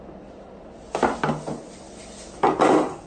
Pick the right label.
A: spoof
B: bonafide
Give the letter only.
B